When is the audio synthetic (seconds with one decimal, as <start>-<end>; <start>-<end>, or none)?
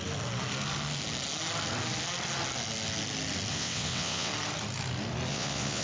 3.5-4.3; 5.3-5.8